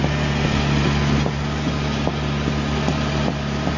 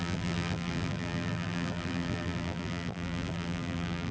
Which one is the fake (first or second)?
second